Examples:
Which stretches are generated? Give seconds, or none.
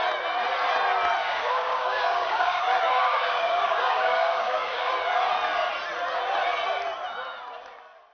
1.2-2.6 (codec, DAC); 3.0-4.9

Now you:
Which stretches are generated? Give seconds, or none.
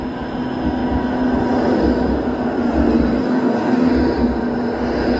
3.2-3.9 (codec, DAC)